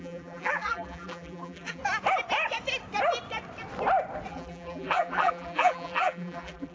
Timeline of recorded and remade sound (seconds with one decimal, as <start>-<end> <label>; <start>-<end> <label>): 0.0-1.8 remade; 1.8-4.3 recorded; 4.3-6.7 remade